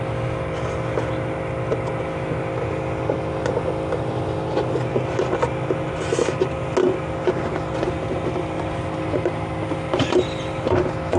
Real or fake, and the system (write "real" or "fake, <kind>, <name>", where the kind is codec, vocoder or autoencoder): real